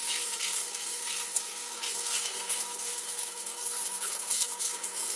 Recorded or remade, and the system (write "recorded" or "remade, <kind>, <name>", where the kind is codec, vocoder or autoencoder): remade, codec, SNAC